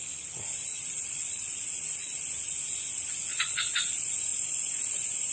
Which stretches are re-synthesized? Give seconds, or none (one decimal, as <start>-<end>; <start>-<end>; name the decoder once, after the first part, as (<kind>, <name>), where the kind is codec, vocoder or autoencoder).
0.7-2.2 (vocoder, Vocos); 3.3-3.9